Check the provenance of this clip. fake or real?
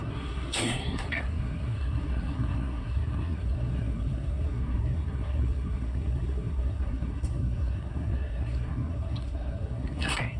fake